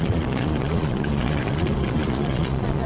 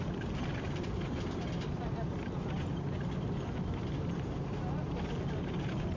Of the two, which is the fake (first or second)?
first